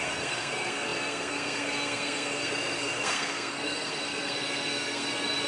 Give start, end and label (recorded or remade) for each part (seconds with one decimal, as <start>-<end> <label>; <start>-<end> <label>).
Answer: 0.0-5.5 remade